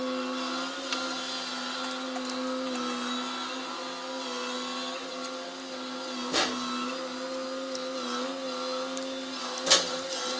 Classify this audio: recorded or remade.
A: recorded